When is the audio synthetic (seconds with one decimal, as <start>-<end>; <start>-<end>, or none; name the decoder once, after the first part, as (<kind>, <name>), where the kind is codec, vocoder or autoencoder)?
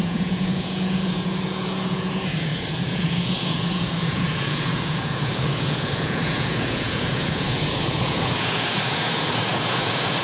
0.0-10.2 (vocoder, Vocos)